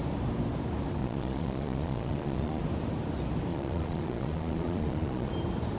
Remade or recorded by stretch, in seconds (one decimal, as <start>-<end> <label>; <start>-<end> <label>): 0.0-1.0 recorded; 1.0-2.6 remade; 2.6-3.5 recorded; 3.5-5.3 remade; 5.3-5.8 recorded